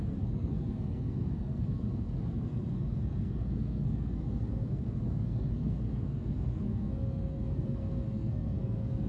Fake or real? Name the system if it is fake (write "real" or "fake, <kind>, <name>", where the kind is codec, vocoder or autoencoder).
fake, codec, SNAC